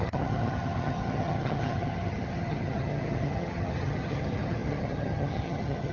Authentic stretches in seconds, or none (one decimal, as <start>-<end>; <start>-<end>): none